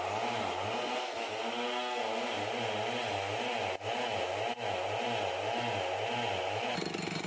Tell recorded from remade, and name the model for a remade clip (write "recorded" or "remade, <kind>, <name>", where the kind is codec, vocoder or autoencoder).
recorded